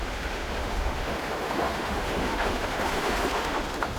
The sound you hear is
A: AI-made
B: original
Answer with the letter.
A